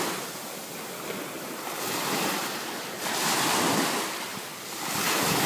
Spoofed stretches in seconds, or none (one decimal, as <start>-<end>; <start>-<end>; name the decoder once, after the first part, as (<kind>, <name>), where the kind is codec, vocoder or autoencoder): 0.4-3.7 (vocoder, BigVGAN v2); 4.3-5.1